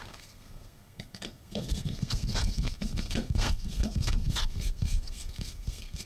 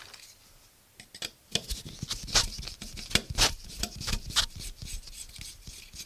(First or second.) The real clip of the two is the second